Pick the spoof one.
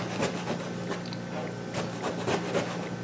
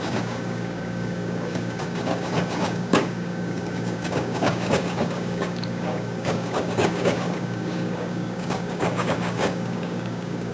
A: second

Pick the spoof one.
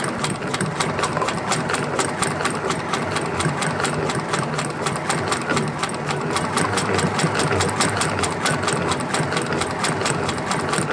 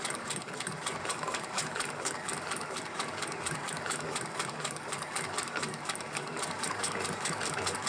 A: second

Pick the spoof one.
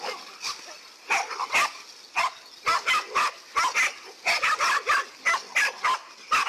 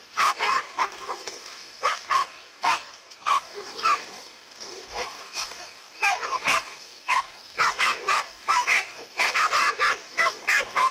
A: second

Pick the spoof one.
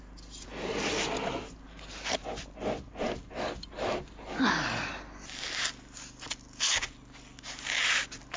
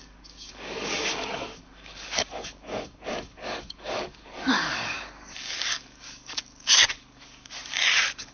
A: second